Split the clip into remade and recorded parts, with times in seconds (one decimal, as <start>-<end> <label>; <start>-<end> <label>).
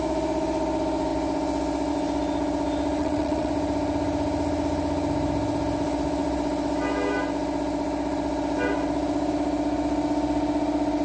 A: 0.0-3.0 recorded; 3.0-3.5 remade; 3.5-11.0 recorded